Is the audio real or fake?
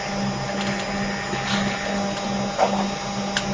real